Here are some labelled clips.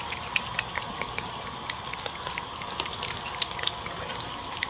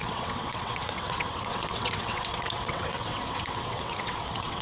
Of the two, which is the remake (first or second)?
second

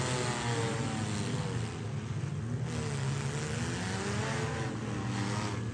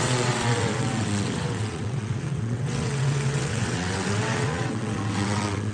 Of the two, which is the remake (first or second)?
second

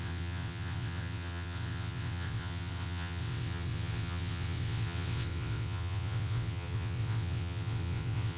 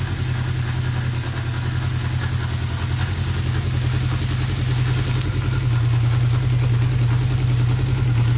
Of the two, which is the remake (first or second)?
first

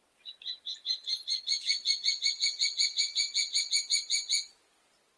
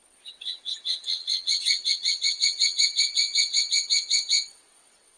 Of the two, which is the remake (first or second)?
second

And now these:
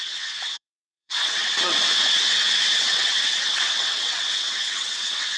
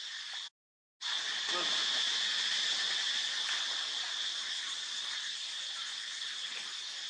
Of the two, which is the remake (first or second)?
first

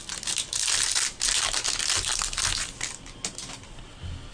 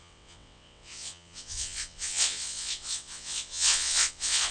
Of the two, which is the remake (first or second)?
second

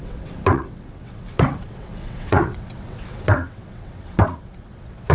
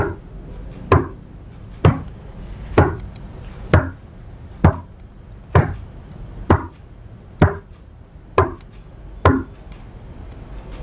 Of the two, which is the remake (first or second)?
first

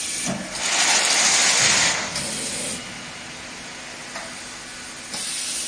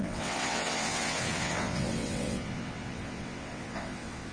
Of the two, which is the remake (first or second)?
second